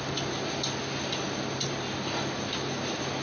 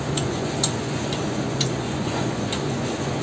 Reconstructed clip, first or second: second